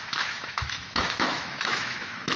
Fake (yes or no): yes